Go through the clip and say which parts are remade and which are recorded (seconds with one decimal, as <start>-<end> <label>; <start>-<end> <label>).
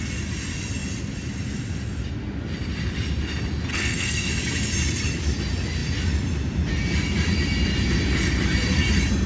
0.0-3.7 recorded; 3.7-4.3 remade; 4.3-9.3 recorded